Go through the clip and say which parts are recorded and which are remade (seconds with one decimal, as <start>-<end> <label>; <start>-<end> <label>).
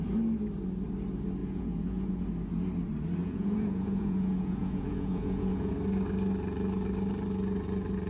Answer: 0.0-1.4 recorded; 1.4-2.1 remade; 2.1-3.2 recorded; 3.2-5.7 remade; 5.7-8.1 recorded